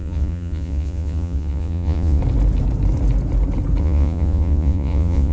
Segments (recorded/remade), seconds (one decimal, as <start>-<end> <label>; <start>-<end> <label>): 0.0-2.2 remade; 2.2-3.8 recorded; 3.8-5.3 remade